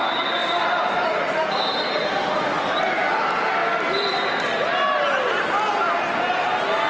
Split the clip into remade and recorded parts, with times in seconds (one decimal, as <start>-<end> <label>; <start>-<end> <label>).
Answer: 0.0-0.4 recorded; 0.4-2.4 remade; 2.4-6.9 recorded